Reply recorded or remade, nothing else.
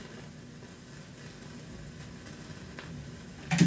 recorded